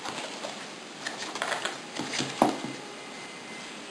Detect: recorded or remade recorded